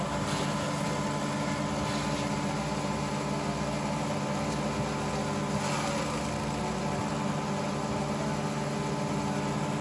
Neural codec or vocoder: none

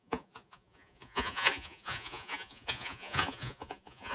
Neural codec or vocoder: vocoder, Vocos